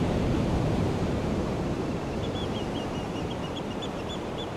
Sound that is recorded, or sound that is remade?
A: remade